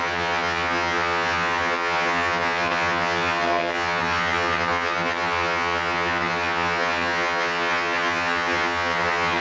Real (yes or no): no